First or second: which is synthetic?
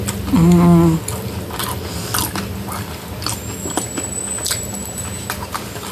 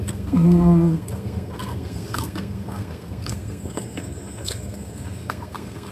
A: second